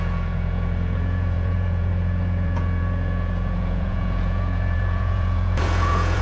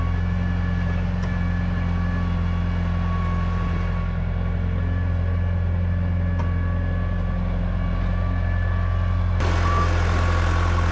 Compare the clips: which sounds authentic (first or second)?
second